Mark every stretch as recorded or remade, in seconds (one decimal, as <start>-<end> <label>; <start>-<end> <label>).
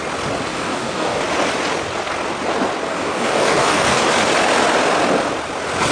0.0-0.5 recorded; 0.5-1.2 remade; 1.2-2.9 recorded; 2.9-4.0 remade; 4.0-5.9 recorded